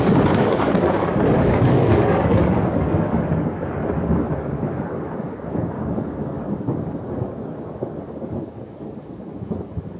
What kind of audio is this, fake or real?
fake